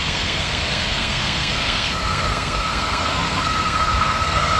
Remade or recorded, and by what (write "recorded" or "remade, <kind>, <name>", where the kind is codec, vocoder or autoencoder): remade, codec, SNAC